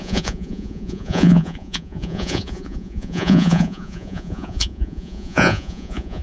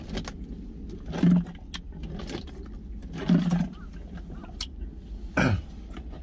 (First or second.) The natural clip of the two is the second